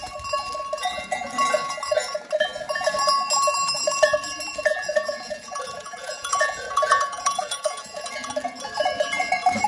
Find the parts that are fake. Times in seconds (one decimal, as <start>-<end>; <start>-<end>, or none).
4.5-8.1